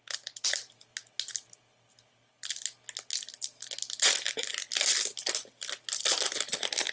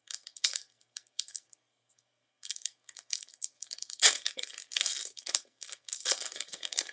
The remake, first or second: second